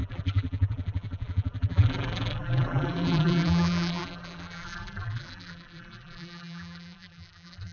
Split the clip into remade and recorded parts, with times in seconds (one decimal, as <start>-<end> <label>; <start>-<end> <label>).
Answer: 0.0-7.7 remade